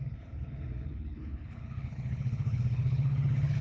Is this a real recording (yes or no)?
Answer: no